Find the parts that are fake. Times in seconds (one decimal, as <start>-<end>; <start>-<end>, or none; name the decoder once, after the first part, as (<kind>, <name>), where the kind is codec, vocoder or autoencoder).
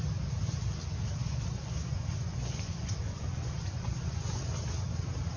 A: 1.2-4.4 (vocoder, Vocos)